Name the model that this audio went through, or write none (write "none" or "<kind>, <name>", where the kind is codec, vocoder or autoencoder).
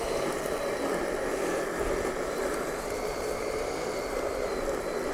vocoder, BigVGAN v2